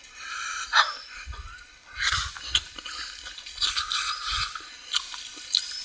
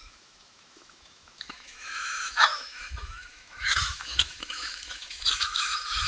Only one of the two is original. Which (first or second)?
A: first